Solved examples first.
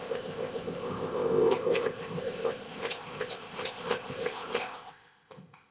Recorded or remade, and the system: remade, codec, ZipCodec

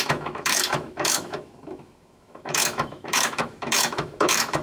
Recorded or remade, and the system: remade, autoencoder, DAC-VAE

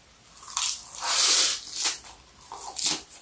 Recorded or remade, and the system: recorded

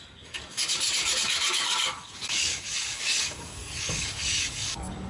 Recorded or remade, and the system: remade, codec, DAC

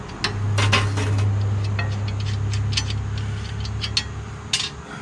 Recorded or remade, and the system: recorded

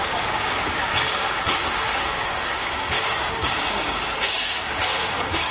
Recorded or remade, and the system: remade, codec, DAC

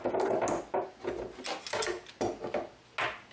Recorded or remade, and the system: recorded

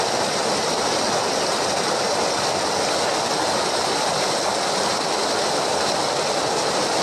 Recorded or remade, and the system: recorded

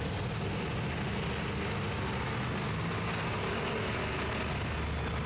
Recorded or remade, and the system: recorded